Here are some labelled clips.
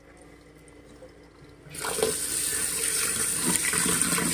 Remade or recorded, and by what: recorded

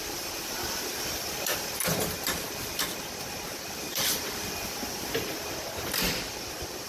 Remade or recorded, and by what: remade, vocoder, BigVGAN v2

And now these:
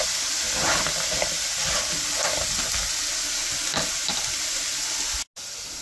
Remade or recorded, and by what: recorded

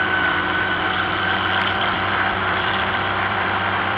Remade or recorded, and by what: remade, vocoder, BigVGAN v2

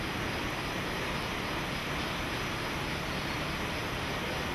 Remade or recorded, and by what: recorded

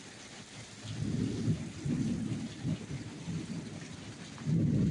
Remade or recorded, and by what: recorded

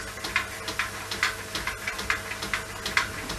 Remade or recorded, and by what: recorded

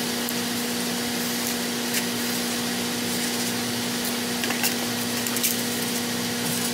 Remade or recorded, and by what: recorded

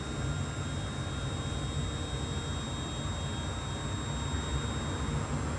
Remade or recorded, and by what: recorded